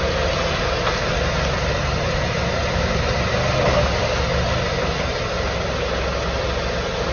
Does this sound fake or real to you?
real